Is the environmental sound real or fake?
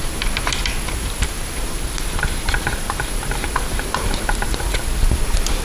fake